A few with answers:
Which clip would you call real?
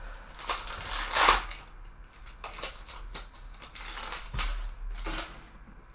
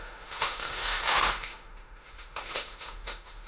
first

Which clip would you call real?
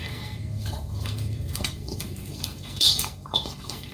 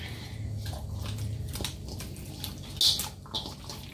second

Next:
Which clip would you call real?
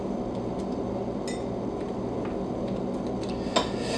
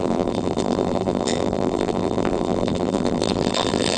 first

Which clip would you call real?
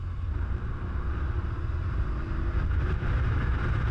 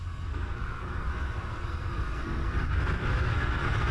first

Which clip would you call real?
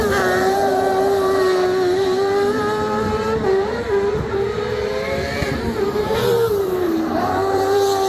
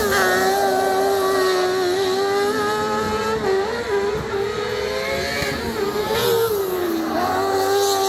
second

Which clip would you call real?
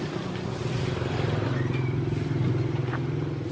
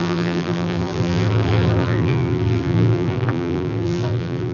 first